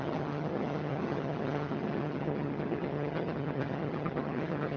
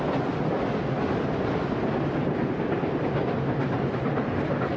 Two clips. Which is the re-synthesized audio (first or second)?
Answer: first